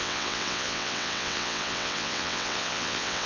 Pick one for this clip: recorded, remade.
remade